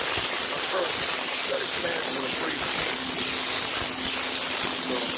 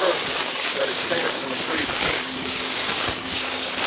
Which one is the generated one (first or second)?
second